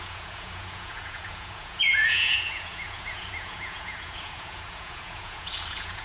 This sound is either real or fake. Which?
fake